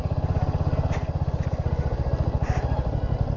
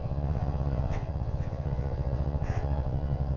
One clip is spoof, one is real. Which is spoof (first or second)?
second